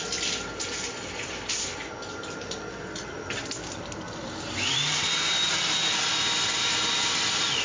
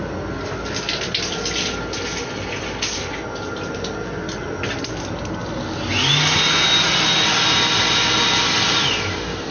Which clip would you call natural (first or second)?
second